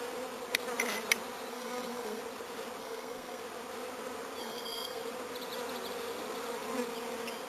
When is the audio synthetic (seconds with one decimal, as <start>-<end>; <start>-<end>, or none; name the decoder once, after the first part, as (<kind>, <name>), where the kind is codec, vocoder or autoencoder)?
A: 1.5-2.2 (codec, SNAC); 2.8-3.4; 4.4-5.0